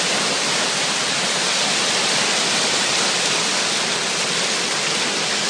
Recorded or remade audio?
recorded